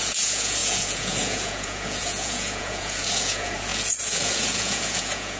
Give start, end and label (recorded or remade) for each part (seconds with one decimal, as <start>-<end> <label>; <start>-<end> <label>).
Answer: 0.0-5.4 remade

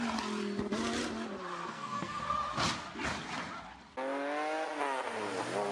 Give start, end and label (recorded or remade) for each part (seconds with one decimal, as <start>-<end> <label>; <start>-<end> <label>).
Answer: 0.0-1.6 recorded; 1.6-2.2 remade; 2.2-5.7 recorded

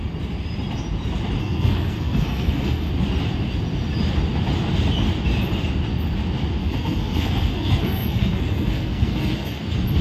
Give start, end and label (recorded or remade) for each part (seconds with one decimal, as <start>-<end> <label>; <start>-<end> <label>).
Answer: 0.0-1.4 recorded; 1.4-2.9 remade; 2.9-6.6 recorded; 6.6-9.6 remade; 9.6-10.0 recorded

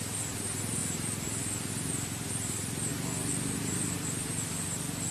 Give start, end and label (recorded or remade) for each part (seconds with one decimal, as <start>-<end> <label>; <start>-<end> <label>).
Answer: 0.0-0.8 remade; 0.8-1.7 recorded; 1.7-2.9 remade; 2.9-3.6 recorded; 3.6-5.1 remade

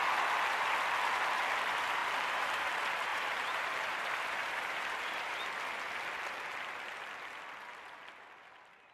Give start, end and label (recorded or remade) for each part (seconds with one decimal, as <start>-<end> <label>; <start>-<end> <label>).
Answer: 0.0-2.0 recorded; 2.0-2.7 remade; 2.7-3.1 recorded; 3.1-5.4 remade; 5.4-8.9 recorded